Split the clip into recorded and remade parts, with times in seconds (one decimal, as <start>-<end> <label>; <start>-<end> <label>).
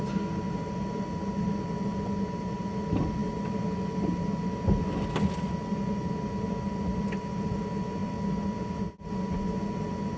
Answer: 0.0-10.2 recorded